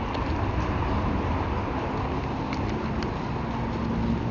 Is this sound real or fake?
real